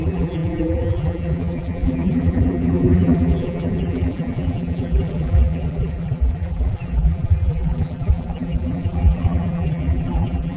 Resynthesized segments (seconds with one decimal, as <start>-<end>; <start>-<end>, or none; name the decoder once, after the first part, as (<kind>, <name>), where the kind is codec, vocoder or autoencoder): 0.0-10.6 (vocoder, BigVGAN v2)